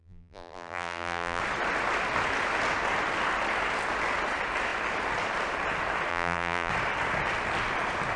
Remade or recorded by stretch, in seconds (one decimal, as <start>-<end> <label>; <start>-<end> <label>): 0.0-1.4 remade; 1.4-6.1 recorded; 6.1-6.7 remade; 6.7-8.2 recorded